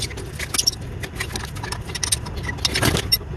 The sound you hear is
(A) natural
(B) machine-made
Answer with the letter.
A